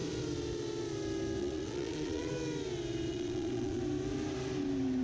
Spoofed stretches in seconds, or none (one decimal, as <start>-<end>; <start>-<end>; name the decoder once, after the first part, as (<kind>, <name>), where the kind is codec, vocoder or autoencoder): 1.4-2.3 (vocoder, Vocos); 3.1-3.8

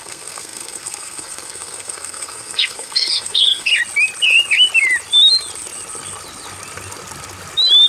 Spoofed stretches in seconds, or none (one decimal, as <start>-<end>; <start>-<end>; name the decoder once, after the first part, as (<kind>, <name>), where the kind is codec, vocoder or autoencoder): 0.0-3.7 (codec, SNAC)

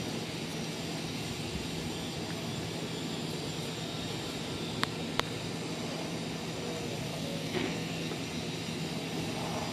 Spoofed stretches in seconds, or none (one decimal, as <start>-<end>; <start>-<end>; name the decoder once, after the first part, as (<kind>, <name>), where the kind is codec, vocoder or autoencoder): 7.1-8.1 (codec, SNAC)

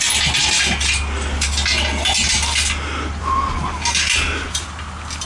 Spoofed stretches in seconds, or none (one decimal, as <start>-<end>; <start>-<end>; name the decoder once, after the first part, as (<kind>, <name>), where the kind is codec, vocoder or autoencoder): none

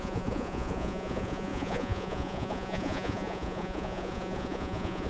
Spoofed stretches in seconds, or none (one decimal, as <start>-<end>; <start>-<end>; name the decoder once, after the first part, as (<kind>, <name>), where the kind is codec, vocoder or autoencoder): 0.0-5.1 (vocoder, Vocos)

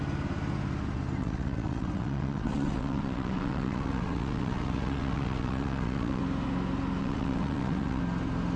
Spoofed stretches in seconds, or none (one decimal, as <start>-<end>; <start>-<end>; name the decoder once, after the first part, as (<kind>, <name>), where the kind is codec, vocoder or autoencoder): 1.2-6.2 (vocoder, WaveNeXt); 7.0-8.0

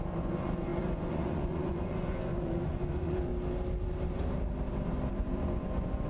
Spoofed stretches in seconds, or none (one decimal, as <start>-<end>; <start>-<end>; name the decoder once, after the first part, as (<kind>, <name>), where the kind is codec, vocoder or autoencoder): 0.0-3.3 (vocoder, Vocos); 5.1-6.1

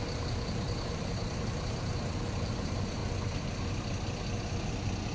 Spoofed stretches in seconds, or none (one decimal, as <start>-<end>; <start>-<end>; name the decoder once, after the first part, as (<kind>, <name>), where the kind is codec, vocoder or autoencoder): 0.0-3.0 (vocoder, BigVGAN v2)